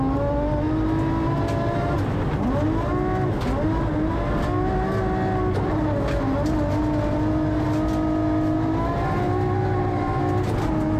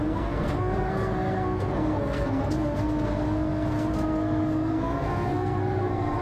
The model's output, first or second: second